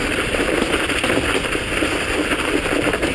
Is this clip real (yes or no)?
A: no